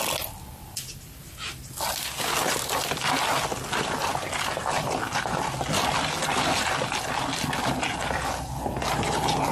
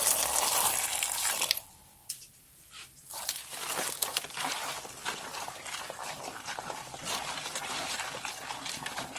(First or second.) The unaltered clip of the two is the first